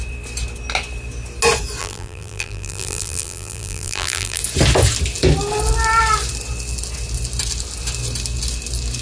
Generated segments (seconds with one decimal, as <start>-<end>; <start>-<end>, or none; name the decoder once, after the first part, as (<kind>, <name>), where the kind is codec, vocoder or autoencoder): 1.8-4.4 (vocoder, BigVGAN v2)